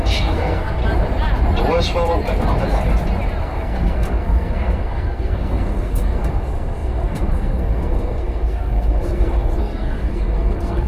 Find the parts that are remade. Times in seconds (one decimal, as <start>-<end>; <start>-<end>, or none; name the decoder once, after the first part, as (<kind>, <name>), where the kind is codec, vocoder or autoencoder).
0.0-0.8 (codec, SNAC); 3.4-10.9